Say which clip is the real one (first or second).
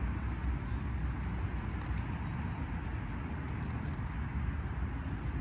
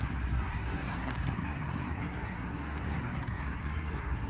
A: first